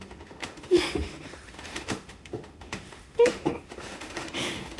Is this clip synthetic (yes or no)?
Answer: yes